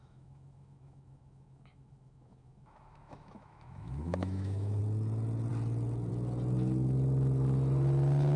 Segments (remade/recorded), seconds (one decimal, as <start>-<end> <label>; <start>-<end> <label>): 0.0-4.8 remade; 4.8-8.4 recorded